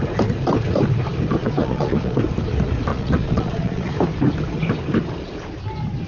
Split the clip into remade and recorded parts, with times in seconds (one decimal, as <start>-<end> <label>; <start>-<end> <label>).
0.0-1.4 recorded; 1.4-2.2 remade; 2.2-2.9 recorded; 2.9-3.9 remade; 3.9-6.1 recorded